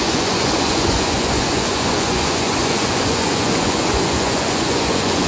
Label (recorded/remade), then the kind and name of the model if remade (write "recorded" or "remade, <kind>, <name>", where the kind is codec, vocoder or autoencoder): remade, vocoder, Vocos